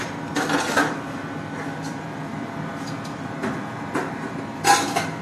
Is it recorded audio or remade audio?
recorded